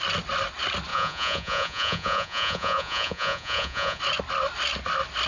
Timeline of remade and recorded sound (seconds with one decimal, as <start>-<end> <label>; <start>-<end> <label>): 0.0-0.9 recorded; 0.9-4.0 remade; 4.0-5.3 recorded